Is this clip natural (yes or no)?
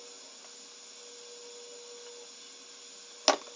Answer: yes